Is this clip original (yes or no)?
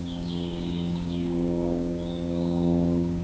no